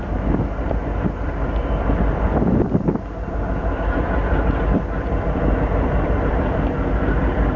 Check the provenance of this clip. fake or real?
fake